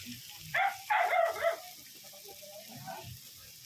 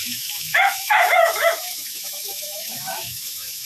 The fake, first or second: second